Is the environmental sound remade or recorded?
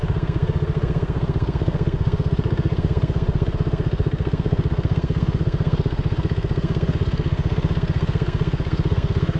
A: remade